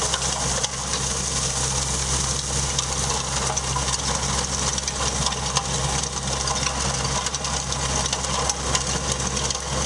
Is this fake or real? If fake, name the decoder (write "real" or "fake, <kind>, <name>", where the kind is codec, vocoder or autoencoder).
real